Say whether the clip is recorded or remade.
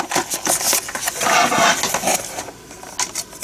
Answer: recorded